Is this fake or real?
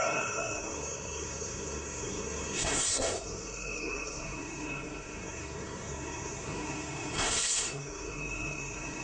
fake